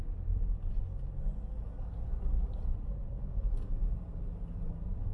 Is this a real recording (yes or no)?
yes